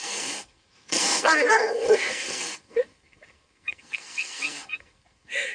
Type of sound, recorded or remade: remade